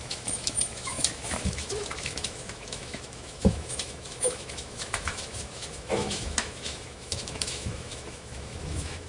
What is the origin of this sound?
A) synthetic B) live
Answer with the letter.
A